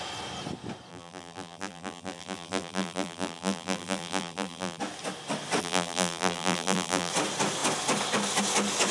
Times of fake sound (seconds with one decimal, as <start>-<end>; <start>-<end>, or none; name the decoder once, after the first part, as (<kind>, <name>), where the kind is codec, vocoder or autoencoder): 0.9-4.8 (vocoder, BigVGAN v2); 5.6-7.1